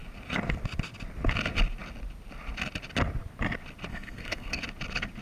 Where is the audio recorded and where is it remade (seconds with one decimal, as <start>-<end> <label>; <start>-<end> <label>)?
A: 0.0-3.9 recorded; 3.9-4.6 remade; 4.6-5.2 recorded